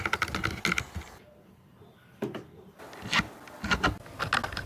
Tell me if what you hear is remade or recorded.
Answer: recorded